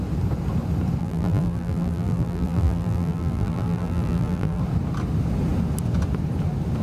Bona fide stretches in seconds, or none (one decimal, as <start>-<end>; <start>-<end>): 0.0-1.0; 4.6-6.8